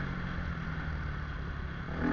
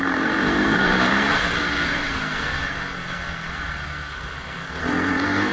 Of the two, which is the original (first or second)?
first